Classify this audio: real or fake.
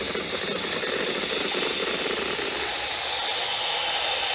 real